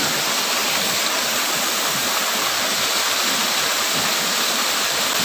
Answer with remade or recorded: recorded